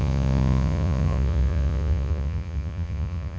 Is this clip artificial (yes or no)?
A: yes